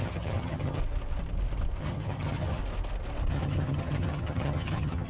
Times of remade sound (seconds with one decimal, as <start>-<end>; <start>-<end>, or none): 0.0-0.8; 1.8-2.6; 3.3-5.1